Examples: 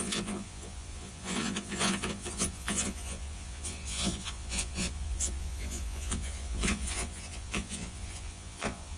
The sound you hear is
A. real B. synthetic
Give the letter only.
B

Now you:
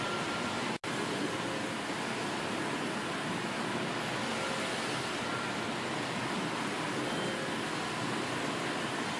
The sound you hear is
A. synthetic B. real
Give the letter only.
B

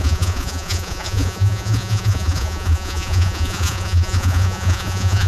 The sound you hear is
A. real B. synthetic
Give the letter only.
B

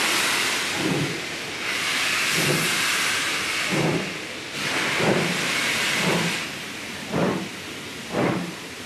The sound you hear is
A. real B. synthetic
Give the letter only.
A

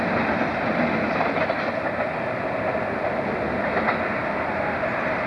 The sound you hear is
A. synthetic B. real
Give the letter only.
B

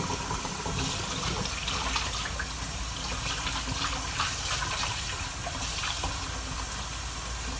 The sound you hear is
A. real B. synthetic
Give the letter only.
A